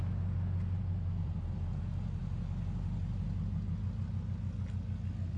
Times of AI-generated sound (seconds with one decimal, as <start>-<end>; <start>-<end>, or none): 1.2-1.8